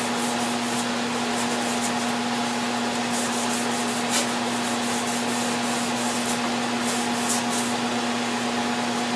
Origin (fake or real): real